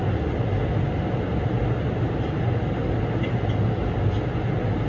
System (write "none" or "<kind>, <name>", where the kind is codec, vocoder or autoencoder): none